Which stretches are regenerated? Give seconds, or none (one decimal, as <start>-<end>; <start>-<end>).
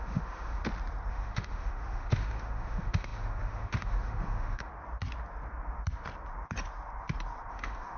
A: 0.0-0.6; 1.1-4.7; 7.5-8.0